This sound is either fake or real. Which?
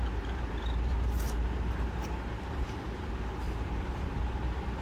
fake